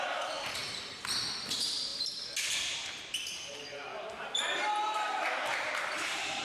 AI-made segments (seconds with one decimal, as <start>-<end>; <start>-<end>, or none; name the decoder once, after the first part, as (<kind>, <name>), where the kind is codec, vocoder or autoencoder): 0.0-6.4 (vocoder, BigVGAN v2)

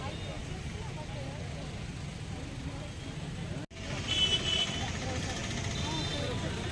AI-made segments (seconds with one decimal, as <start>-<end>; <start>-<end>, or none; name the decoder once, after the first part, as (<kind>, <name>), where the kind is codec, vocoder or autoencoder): none